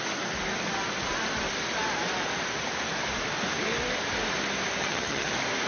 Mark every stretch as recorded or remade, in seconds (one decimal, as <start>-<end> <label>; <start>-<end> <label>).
0.0-4.8 recorded; 4.8-5.3 remade; 5.3-5.7 recorded